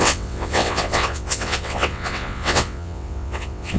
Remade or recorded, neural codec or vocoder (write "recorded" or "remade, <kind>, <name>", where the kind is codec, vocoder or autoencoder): remade, vocoder, WaveNeXt